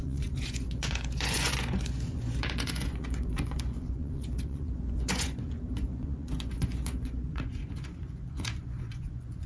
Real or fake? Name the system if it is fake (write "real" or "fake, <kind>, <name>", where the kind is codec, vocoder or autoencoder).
fake, vocoder, Vocos